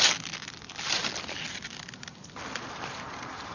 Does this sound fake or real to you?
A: real